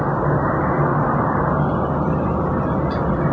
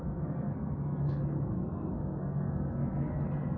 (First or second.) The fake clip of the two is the second